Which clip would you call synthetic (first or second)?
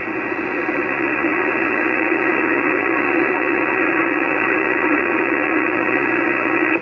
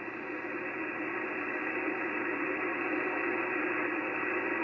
first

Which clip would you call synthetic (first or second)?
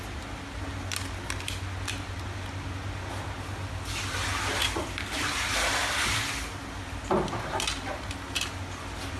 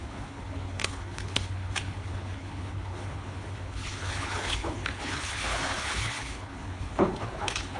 second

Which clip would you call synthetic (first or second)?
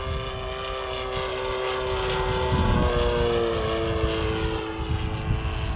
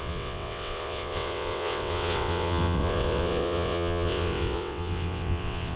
second